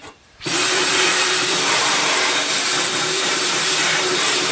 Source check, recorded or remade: remade